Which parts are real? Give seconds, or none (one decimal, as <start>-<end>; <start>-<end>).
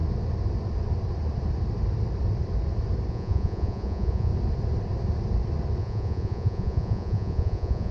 0.0-3.1; 4.3-5.8